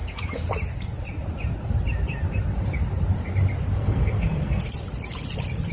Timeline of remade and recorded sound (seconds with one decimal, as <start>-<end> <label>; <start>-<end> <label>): 0.0-3.8 recorded; 3.8-4.6 remade; 4.6-5.7 recorded